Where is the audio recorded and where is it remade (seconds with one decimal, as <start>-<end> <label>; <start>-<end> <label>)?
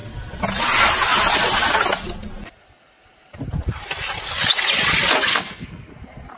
0.0-5.3 recorded; 5.3-5.9 remade; 5.9-6.4 recorded